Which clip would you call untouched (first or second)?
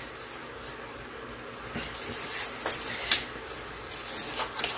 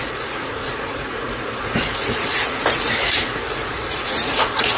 first